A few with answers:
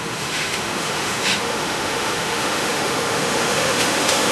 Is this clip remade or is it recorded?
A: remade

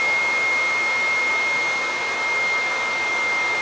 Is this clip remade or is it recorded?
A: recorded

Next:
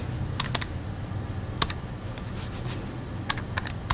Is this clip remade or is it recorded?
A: recorded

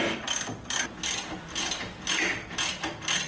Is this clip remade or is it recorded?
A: recorded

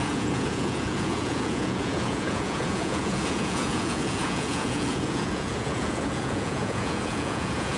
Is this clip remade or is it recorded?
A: remade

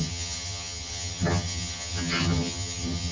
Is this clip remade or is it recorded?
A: remade